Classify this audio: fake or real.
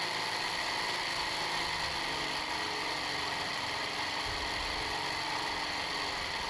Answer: real